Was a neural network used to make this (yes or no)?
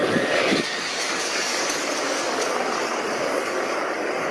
yes